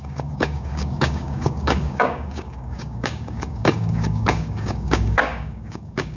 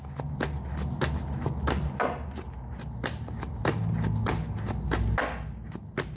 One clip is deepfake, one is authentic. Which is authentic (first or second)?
second